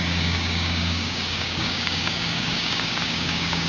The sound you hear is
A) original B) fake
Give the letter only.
B